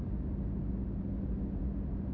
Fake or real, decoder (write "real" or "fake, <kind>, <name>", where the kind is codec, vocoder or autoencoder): real